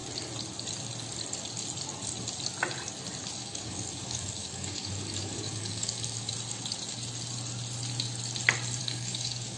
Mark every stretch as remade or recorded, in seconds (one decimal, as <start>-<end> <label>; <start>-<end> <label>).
0.0-3.4 recorded; 3.4-6.3 remade; 6.3-8.8 recorded; 8.8-9.6 remade